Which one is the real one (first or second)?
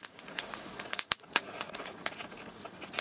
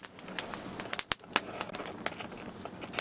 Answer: second